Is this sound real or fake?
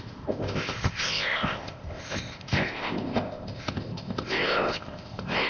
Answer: fake